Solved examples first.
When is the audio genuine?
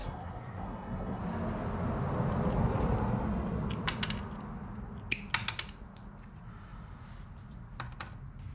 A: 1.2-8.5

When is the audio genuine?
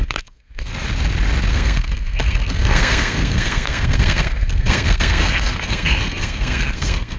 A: 0.7-1.5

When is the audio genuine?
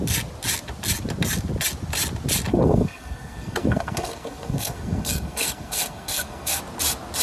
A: 0.0-2.5; 6.6-7.2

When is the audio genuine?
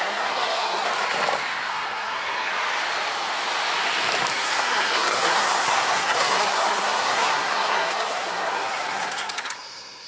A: 0.9-1.7; 2.5-4.3